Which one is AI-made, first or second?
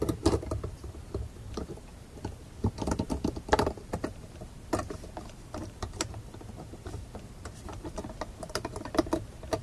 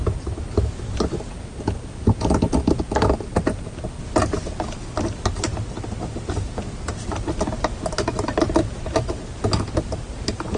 first